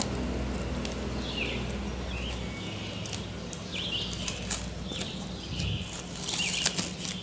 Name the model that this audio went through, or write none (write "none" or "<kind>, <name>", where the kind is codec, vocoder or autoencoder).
none